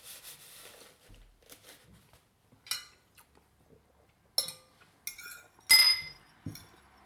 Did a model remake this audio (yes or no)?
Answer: no